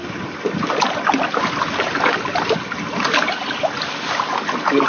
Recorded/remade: recorded